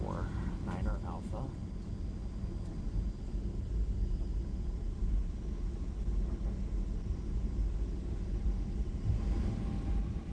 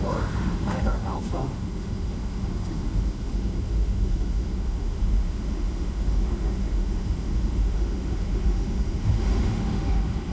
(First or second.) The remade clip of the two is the second